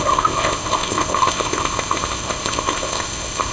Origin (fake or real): fake